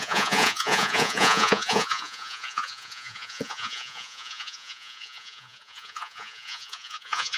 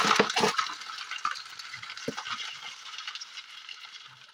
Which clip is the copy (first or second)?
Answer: first